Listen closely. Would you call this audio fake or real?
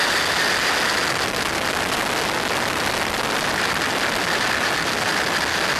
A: real